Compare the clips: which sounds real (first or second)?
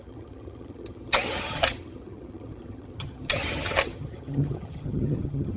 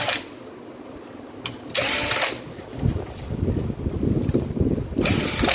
second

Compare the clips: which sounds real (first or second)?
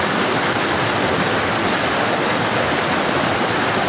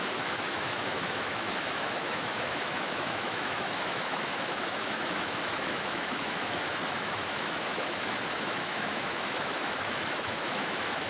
first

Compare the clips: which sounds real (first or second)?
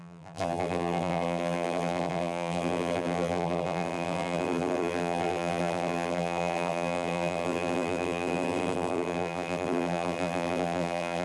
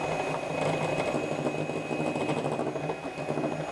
second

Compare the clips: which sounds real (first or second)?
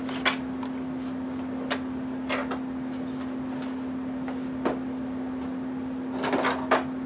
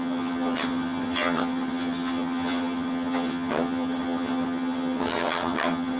first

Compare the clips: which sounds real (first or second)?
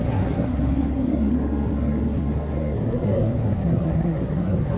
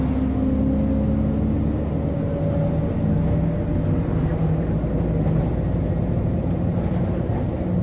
second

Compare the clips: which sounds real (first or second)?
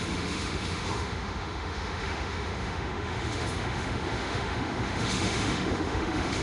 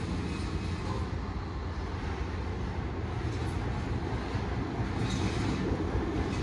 second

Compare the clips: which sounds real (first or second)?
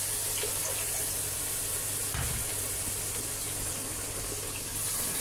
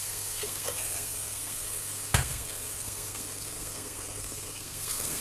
first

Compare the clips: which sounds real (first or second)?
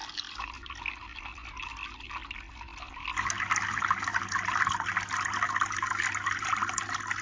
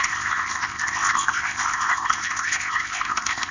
first